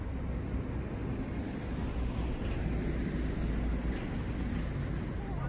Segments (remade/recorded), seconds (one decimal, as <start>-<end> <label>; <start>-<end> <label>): 0.0-5.5 recorded